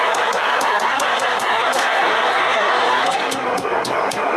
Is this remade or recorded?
remade